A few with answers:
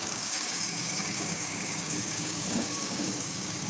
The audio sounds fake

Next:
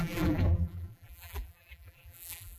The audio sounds fake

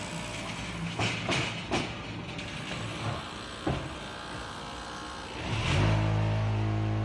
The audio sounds real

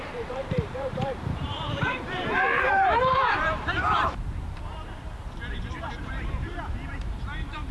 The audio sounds fake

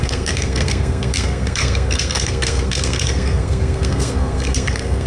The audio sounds fake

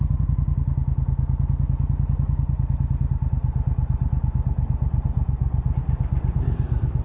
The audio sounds real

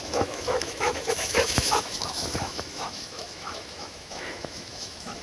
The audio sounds fake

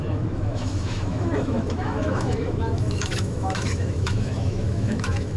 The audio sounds fake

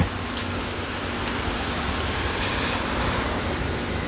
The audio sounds real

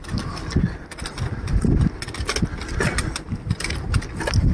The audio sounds real